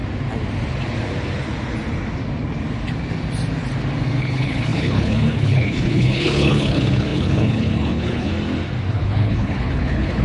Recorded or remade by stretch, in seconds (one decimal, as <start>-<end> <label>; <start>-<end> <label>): 0.0-4.2 recorded; 4.2-8.3 remade; 8.3-8.9 recorded; 8.9-10.2 remade